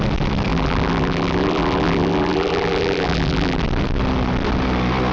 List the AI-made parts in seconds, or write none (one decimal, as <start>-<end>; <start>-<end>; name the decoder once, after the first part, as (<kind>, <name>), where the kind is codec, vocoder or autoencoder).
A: 0.5-3.6 (vocoder, BigVGAN v2)